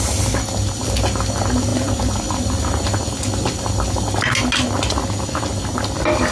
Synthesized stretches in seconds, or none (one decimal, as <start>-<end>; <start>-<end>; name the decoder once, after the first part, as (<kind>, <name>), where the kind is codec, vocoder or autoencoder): none